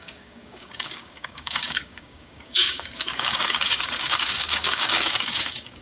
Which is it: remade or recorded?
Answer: remade